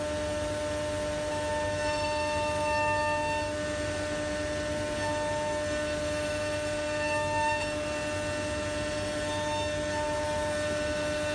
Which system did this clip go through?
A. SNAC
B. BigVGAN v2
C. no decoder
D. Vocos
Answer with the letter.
C